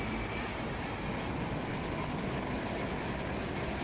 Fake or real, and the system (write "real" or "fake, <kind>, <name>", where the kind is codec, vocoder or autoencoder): real